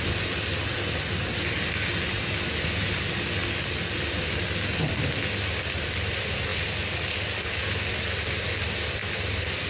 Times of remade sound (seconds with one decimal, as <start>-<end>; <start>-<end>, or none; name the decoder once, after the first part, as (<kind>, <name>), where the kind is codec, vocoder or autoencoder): none